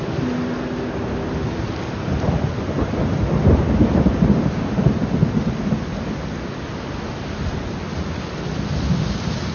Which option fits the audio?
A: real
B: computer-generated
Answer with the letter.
A